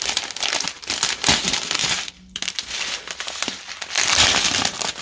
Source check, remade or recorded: recorded